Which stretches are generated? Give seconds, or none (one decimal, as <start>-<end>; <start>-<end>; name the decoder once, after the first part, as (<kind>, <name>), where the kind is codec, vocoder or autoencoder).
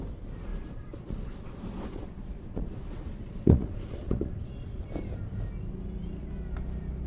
0.5-4.8 (vocoder, Vocos)